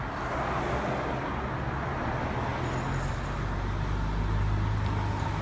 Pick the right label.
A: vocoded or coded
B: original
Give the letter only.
B